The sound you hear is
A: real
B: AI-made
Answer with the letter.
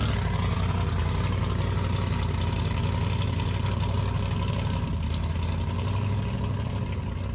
A